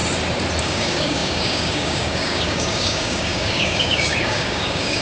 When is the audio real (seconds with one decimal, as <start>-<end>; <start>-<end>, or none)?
0.0-0.6

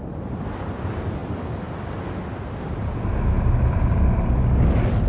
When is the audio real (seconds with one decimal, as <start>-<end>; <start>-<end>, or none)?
0.0-5.1

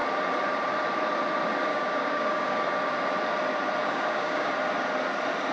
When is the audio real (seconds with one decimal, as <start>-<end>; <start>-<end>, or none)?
0.0-1.7; 2.6-3.8; 4.5-5.5